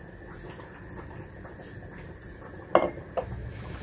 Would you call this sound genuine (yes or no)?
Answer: yes